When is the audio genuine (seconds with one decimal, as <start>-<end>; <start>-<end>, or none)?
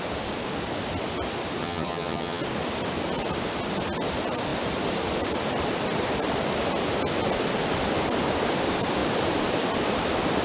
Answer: 0.0-1.6; 2.4-10.4